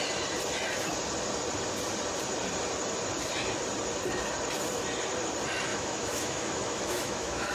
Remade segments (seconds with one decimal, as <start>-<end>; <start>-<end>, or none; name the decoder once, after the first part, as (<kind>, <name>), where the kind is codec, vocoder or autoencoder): 5.7-7.5 (autoencoder, DAC-VAE)